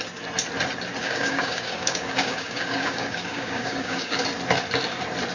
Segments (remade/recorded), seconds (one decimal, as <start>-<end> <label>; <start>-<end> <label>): 0.0-1.0 recorded; 1.0-4.2 remade; 4.2-5.3 recorded